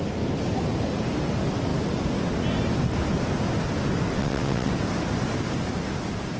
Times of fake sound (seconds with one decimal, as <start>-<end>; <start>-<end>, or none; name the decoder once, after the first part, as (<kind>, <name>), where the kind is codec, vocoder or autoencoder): 4.2-4.7 (vocoder, WaveNeXt)